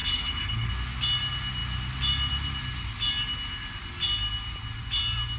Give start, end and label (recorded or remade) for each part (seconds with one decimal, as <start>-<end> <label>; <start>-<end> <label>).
0.0-0.7 remade; 0.7-5.4 recorded

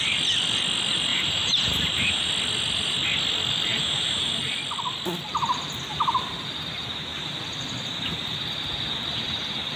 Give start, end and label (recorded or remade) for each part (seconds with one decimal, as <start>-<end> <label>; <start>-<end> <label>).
0.0-1.1 recorded; 1.1-2.3 remade; 2.3-3.7 recorded; 3.7-4.3 remade; 4.3-7.1 recorded; 7.1-9.4 remade; 9.4-9.8 recorded

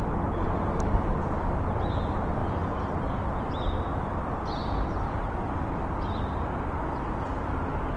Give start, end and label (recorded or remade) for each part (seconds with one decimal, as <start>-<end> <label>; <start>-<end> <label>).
0.0-0.4 recorded; 0.4-0.9 remade; 0.9-8.0 recorded

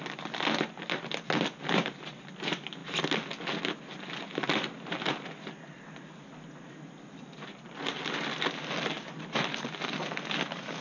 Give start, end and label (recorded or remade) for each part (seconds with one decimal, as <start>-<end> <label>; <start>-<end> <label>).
0.0-10.8 recorded